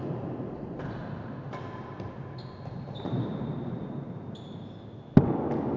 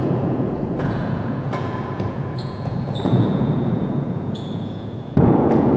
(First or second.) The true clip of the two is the first